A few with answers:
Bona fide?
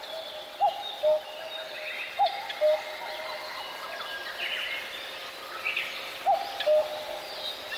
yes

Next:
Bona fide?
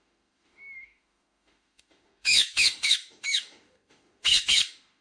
no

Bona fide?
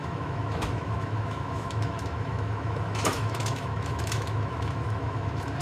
no